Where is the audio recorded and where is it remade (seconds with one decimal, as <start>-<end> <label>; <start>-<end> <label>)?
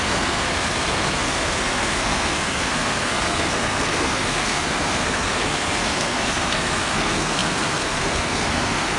0.0-9.0 remade